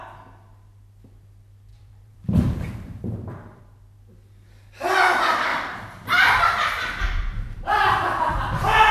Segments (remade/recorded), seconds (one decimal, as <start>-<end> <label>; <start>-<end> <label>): 0.0-1.7 recorded; 1.7-3.6 remade; 3.6-5.5 recorded; 5.5-6.4 remade; 6.4-8.9 recorded